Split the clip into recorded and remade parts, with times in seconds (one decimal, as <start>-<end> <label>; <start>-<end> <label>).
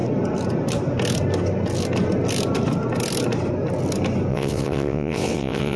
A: 0.0-4.3 recorded; 4.3-5.8 remade